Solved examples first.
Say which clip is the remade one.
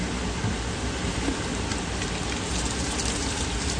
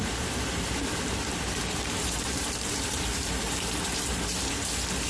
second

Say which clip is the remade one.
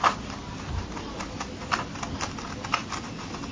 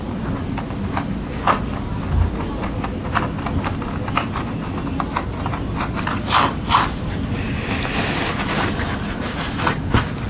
first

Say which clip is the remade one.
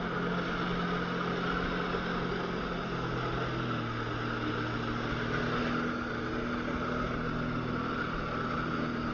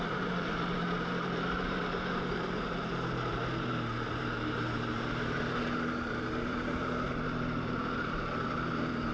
second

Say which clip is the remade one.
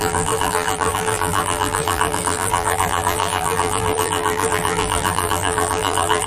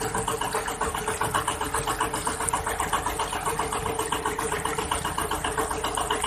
first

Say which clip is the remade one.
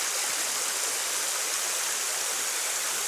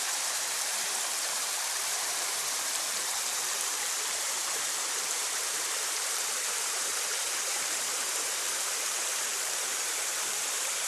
second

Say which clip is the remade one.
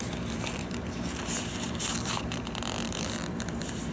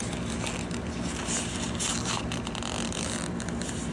first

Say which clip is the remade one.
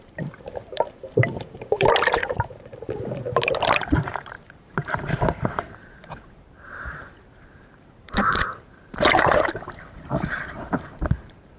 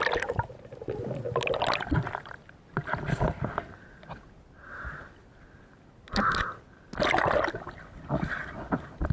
first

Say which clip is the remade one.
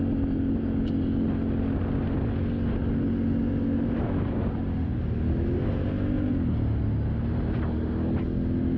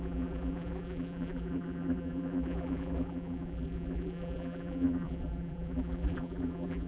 second